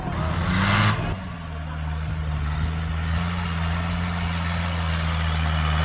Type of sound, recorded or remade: recorded